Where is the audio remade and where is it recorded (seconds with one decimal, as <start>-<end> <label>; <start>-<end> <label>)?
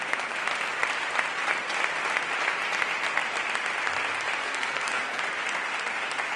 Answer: 0.0-4.4 recorded; 4.4-5.2 remade; 5.2-6.4 recorded